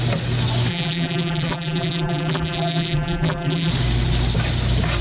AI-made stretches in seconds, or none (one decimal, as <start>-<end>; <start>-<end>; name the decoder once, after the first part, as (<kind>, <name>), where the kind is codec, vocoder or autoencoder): 0.7-3.7 (vocoder, BigVGAN v2)